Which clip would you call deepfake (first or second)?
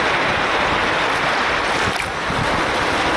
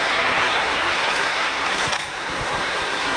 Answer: second